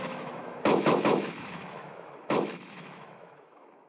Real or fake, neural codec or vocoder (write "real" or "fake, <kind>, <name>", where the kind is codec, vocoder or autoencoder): fake, autoencoder, DAC-VAE